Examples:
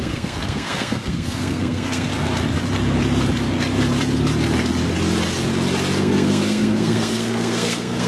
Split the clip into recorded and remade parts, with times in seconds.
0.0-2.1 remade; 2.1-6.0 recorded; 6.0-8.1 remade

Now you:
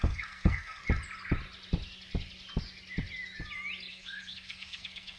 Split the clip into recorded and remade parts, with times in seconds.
0.0-0.8 remade; 0.8-3.9 recorded; 3.9-5.2 remade

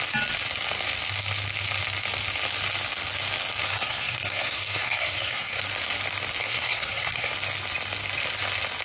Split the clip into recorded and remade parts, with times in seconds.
0.0-3.6 recorded; 3.6-5.6 remade; 5.6-6.4 recorded; 6.4-7.3 remade; 7.3-8.8 recorded

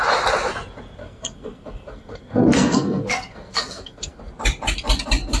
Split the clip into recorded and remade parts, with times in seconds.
0.0-1.0 recorded; 1.0-4.2 remade; 4.2-5.4 recorded

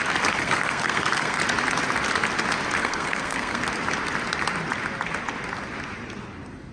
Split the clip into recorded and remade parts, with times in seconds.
0.0-0.4 recorded; 0.4-1.4 remade; 1.4-2.8 recorded; 2.8-3.6 remade; 3.6-6.7 recorded